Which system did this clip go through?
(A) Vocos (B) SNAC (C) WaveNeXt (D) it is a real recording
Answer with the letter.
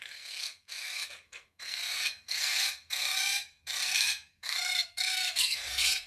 B